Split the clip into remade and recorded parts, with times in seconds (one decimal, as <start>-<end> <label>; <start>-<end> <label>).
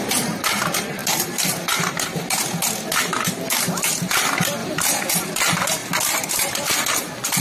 0.0-7.4 recorded